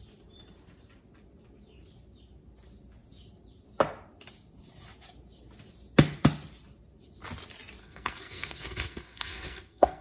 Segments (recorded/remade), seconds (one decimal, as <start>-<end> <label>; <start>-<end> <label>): 0.0-7.8 recorded; 7.8-10.0 remade